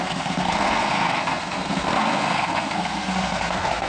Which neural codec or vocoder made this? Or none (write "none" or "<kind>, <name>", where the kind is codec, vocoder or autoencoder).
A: codec, SNAC